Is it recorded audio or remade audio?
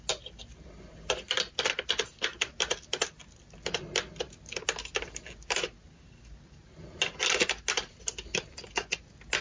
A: recorded